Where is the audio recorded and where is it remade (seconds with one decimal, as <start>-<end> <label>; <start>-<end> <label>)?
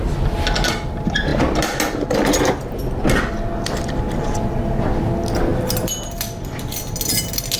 0.0-7.6 recorded